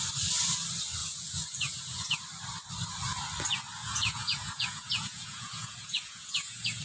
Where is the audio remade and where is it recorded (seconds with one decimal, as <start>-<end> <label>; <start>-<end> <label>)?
0.0-1.0 recorded; 1.0-2.2 remade; 2.2-3.8 recorded; 3.8-6.8 remade